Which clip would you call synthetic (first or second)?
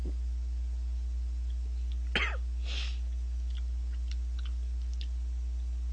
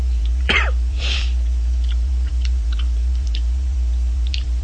second